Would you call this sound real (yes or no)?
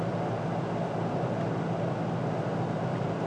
yes